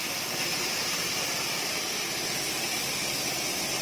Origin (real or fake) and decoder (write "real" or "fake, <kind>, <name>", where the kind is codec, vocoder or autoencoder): real